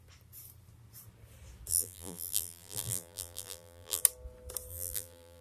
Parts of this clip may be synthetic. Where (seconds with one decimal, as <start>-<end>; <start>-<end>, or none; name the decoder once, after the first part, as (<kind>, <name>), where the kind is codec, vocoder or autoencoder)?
1.7-4.0 (vocoder, BigVGAN v2); 4.7-5.4